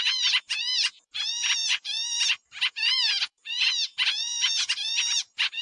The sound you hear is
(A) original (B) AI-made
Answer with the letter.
B